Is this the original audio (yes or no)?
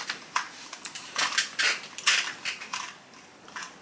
yes